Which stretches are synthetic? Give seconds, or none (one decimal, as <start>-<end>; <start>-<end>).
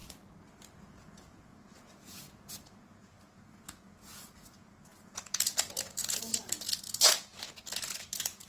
0.8-8.5